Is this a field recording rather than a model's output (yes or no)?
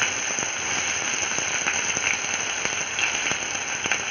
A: yes